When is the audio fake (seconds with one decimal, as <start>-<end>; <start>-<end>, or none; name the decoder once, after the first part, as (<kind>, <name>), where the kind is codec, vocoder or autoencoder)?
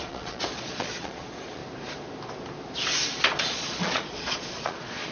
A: 0.0-1.6 (vocoder, Vocos); 3.2-5.1